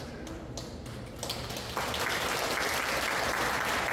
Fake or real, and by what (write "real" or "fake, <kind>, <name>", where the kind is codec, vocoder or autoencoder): real